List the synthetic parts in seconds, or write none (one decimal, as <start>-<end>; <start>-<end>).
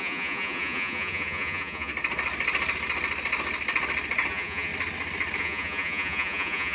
0.0-1.9; 4.3-4.7; 5.4-6.7